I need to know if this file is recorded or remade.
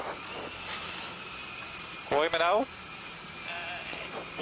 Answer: recorded